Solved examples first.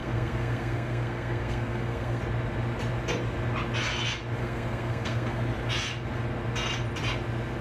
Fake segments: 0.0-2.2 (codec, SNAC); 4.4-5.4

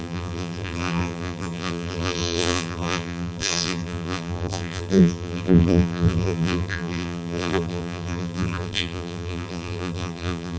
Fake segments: 0.0-10.6 (vocoder, BigVGAN v2)

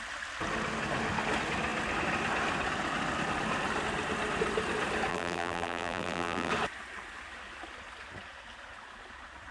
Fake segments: 5.1-6.5 (vocoder, BigVGAN v2)

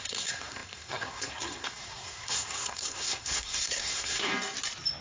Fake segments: 0.0-4.3 (codec, SNAC)